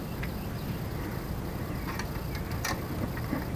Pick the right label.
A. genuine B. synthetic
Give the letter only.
A